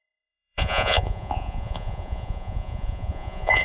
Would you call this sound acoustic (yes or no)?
no